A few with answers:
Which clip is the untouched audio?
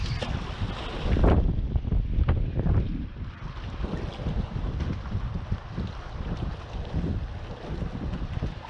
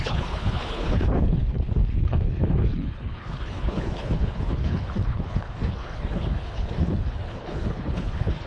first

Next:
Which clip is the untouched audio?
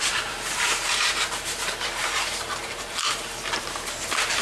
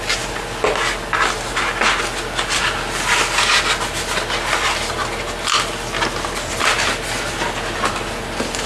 second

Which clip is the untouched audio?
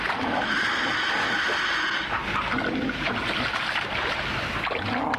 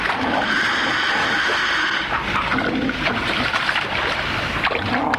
first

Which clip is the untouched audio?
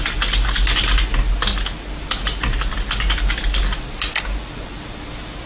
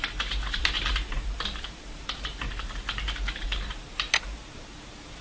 first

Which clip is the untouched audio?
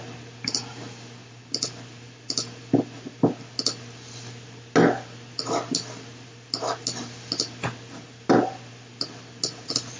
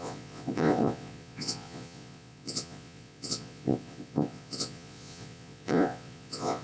first